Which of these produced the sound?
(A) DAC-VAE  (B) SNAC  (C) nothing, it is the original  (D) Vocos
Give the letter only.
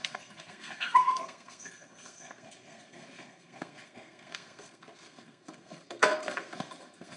B